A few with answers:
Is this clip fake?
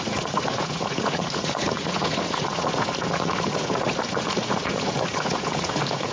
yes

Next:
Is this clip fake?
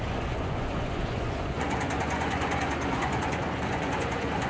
yes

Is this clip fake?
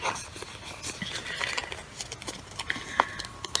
no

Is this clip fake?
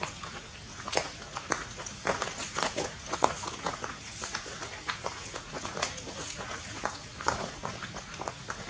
yes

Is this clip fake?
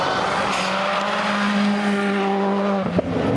no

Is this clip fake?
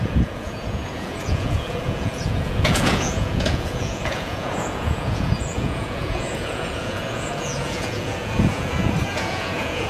yes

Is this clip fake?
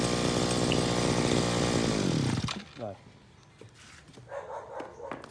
no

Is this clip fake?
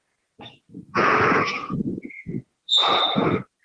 yes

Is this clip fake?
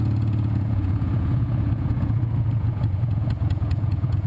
yes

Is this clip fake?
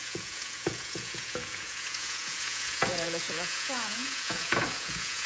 yes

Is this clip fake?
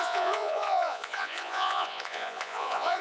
yes